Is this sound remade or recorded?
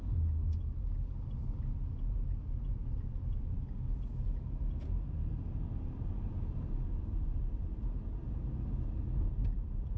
recorded